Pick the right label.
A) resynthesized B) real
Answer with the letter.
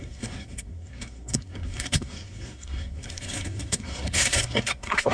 A